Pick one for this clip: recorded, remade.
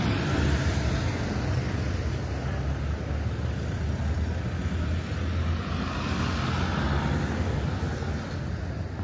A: recorded